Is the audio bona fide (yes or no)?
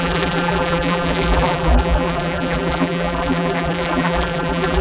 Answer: no